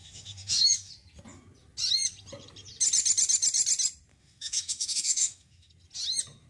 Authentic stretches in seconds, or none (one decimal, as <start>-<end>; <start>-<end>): 0.9-4.1; 5.7-6.5